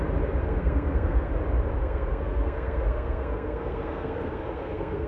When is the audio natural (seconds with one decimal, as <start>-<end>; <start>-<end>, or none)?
0.0-0.4; 1.3-1.8

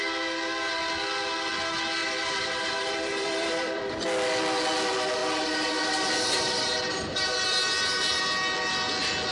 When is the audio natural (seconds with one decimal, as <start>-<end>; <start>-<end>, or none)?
0.0-2.0; 3.8-5.2; 8.2-9.3